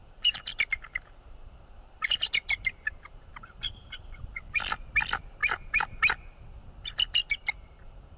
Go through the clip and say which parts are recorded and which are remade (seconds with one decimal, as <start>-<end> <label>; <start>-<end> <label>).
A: 0.0-4.6 remade; 4.6-5.4 recorded; 5.4-6.0 remade; 6.0-7.2 recorded; 7.2-8.2 remade